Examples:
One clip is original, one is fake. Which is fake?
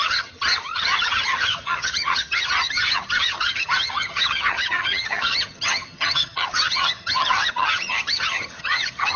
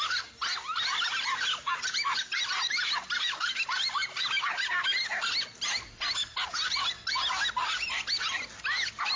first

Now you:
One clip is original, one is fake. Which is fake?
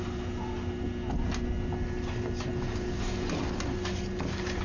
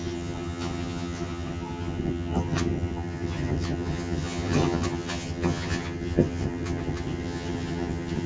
second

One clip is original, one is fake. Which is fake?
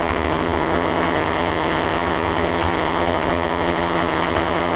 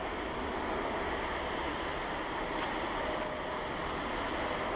first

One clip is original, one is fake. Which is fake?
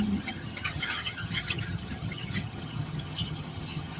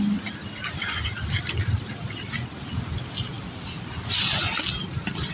first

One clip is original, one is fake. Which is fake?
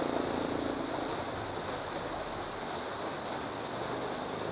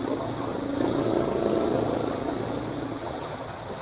second